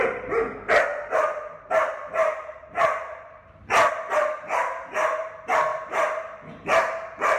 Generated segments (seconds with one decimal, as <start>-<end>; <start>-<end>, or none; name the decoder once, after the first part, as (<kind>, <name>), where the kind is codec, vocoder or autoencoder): none